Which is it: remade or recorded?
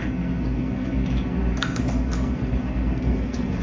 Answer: remade